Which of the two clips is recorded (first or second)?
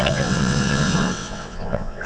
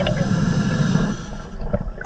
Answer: second